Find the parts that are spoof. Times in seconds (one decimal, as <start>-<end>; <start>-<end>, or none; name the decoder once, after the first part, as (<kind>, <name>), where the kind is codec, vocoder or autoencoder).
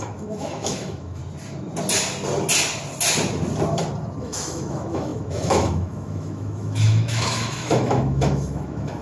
0.0-1.2 (autoencoder, DAC-VAE); 4.2-9.0